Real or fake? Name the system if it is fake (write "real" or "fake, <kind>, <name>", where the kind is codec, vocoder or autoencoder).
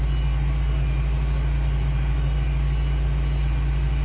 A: real